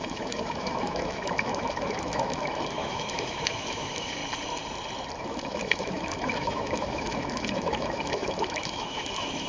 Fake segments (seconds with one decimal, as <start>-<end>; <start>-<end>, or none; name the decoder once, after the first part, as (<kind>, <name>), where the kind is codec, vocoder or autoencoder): 0.0-4.2 (autoencoder, DAC-VAE); 5.2-9.5